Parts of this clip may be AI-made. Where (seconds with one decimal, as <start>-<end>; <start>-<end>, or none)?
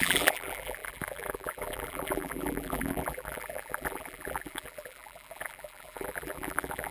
0.0-6.9